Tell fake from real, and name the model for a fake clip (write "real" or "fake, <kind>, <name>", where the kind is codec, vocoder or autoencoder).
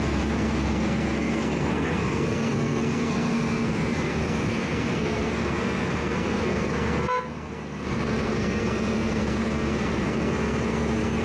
fake, codec, SNAC